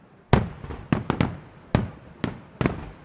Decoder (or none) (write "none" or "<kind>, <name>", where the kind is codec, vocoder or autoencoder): none